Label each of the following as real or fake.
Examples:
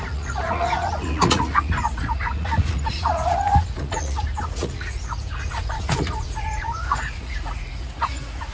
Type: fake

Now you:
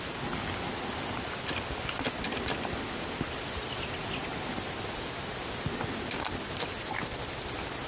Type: real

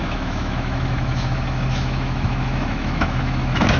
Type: fake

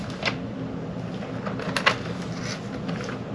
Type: real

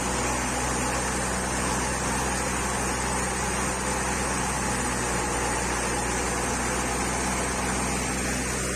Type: real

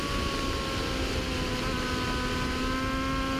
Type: real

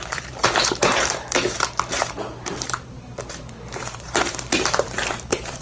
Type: fake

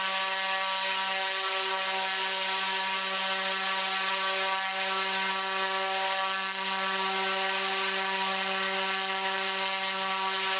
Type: real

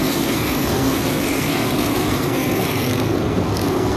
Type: fake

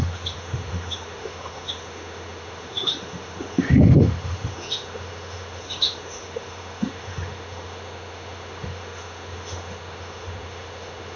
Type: fake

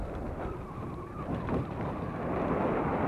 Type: real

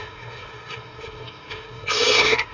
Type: fake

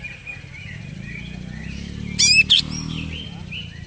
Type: real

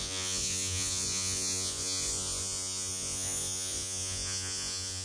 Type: fake